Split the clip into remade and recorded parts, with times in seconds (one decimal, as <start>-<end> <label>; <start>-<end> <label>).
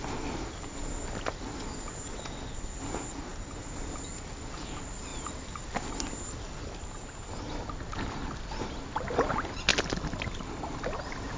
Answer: 0.0-11.4 recorded